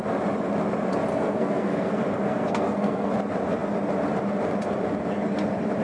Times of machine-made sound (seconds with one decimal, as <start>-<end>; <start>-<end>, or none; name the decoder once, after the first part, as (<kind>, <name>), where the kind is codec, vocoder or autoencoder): 1.1-3.1 (codec, SNAC)